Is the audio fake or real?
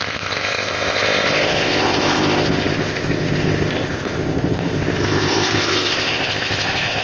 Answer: fake